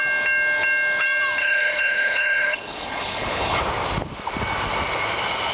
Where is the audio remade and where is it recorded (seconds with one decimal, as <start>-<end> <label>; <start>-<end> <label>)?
0.0-1.4 recorded; 1.4-3.6 remade; 3.6-5.5 recorded